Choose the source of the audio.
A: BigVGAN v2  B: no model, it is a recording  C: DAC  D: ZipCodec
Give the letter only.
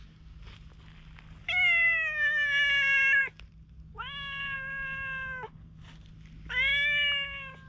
B